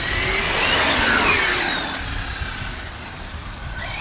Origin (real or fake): real